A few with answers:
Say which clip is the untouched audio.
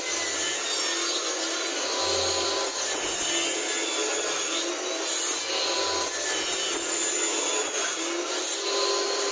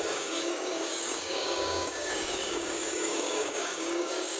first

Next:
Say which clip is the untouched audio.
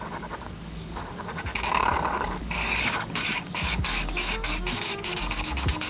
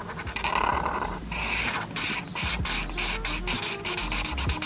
second